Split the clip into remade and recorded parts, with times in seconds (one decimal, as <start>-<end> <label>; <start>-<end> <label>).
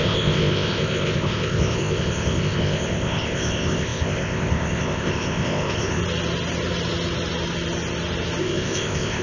0.0-6.0 remade; 6.0-8.4 recorded; 8.4-9.2 remade